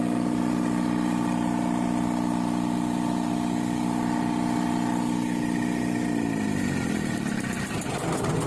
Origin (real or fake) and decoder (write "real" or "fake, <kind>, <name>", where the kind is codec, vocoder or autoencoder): real